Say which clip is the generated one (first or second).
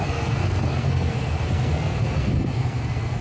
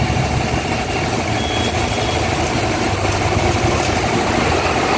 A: first